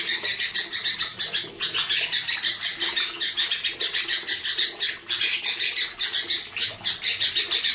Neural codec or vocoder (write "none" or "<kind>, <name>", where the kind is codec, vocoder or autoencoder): none